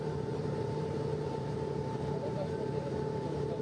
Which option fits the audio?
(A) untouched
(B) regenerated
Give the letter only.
B